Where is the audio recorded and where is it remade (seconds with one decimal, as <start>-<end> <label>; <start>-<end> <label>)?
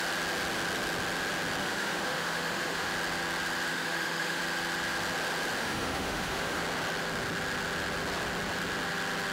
0.0-1.6 recorded; 1.6-2.9 remade; 2.9-3.7 recorded; 3.7-4.4 remade; 4.4-5.6 recorded; 5.6-6.6 remade; 6.6-9.3 recorded